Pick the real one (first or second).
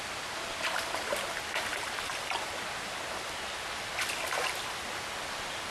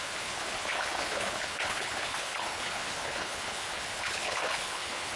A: first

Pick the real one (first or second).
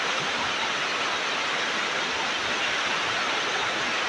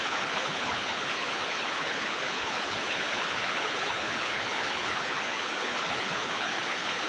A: first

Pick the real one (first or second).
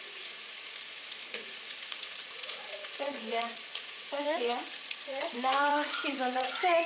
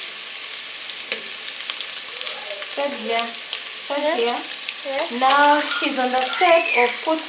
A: second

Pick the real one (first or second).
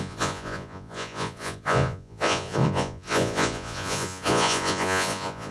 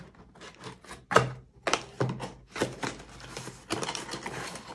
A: second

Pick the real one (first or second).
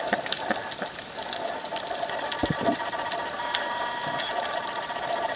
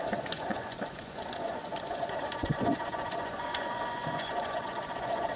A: first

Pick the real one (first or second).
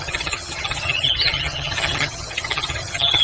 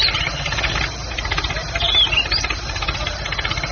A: second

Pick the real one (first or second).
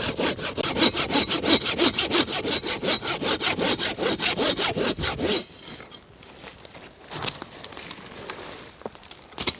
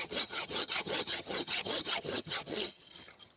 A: first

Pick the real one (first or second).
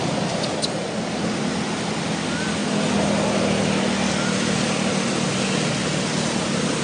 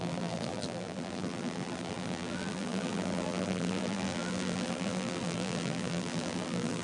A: first